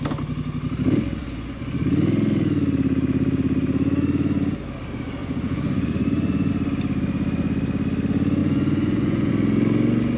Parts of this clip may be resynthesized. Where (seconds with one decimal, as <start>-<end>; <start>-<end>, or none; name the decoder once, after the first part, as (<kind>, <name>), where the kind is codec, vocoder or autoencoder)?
1.2-1.8 (vocoder, Vocos); 5.2-6.5; 8.4-9.3